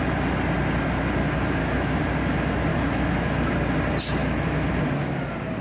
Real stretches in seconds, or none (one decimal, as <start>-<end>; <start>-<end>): 0.0-1.6; 2.2-2.7; 3.5-4.2; 4.8-5.6